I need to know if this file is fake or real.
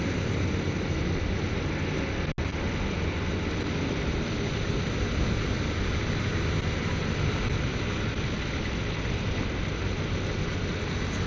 real